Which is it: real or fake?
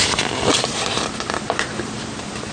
fake